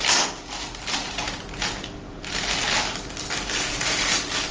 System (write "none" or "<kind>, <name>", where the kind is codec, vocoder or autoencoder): none